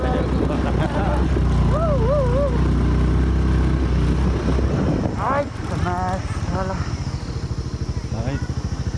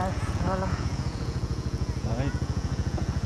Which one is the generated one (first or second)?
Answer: second